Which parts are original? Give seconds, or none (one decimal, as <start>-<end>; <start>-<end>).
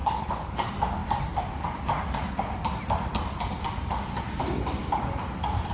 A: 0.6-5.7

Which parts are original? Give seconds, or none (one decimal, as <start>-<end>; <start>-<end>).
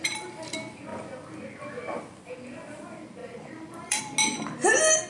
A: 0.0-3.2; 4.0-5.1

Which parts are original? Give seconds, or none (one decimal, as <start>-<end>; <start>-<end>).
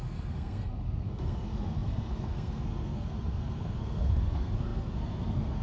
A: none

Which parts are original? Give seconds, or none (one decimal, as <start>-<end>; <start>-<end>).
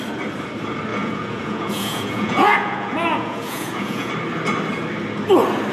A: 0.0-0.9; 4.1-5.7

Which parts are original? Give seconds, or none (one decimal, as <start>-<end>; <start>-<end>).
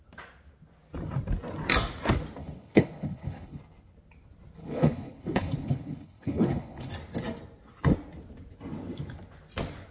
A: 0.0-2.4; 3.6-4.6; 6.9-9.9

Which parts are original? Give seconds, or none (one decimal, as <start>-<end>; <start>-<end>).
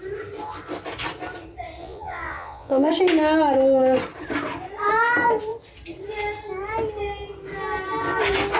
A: 0.0-1.8; 2.9-8.6